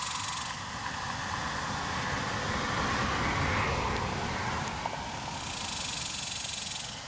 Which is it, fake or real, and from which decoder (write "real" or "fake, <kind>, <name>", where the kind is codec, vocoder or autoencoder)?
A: real